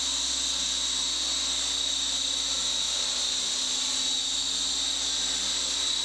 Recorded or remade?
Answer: recorded